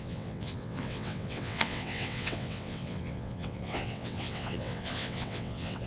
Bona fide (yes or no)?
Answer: no